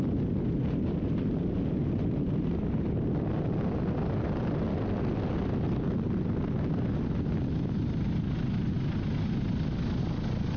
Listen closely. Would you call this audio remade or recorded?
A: recorded